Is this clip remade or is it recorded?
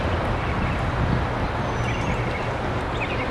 recorded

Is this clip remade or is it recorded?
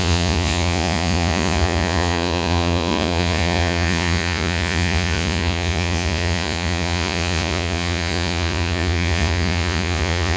remade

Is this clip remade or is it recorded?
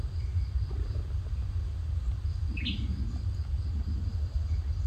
recorded